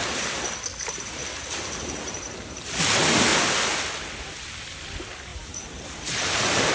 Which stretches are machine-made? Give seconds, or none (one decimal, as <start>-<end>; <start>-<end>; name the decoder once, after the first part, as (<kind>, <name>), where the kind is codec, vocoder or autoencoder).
1.2-2.8 (vocoder, BigVGAN v2); 5.3-6.7